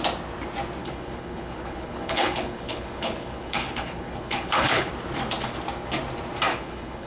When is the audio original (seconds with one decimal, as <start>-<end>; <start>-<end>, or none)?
0.0-0.8; 4.9-6.5